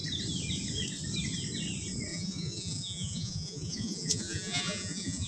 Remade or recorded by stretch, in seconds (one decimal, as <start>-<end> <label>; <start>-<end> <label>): 0.0-2.1 recorded; 2.1-5.3 remade